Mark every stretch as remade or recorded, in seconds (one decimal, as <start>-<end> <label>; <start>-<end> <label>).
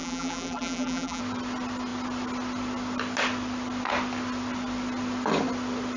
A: 0.0-1.2 remade; 1.2-6.0 recorded